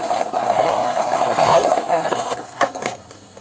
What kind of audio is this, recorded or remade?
remade